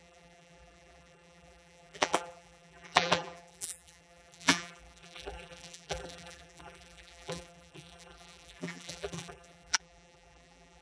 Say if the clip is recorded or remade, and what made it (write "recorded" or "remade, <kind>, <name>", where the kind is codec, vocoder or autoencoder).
remade, vocoder, BigVGAN v2